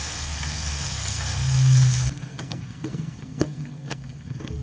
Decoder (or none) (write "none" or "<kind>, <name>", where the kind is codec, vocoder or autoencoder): codec, SNAC